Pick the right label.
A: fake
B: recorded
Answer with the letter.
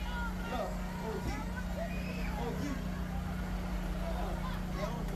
B